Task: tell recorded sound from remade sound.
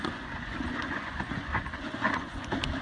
remade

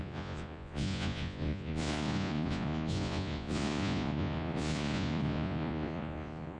remade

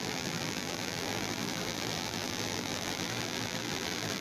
remade